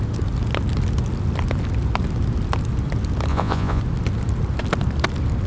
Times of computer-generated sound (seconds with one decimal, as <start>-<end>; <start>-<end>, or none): 3.3-3.8